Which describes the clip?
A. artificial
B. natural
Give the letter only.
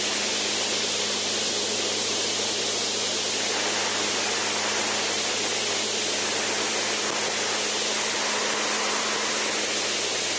B